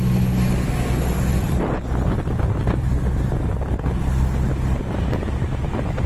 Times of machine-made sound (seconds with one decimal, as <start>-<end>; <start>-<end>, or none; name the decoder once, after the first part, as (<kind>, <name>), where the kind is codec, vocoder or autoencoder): 1.3-2.9 (vocoder, BigVGAN v2)